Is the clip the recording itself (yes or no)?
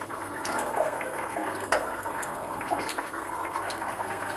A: no